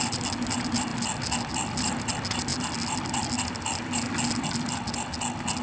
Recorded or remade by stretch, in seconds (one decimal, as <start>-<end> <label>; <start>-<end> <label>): 0.0-5.6 recorded